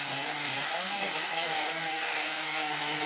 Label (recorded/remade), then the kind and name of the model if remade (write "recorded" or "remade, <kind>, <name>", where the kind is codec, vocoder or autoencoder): remade, codec, DAC